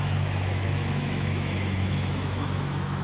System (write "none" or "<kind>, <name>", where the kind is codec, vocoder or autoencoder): autoencoder, DAC-VAE